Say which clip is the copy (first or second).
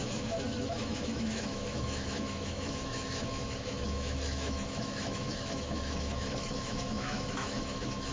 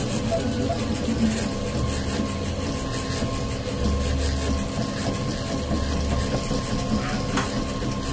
first